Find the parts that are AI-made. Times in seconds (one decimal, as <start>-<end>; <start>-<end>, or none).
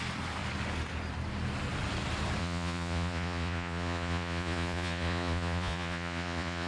2.4-6.7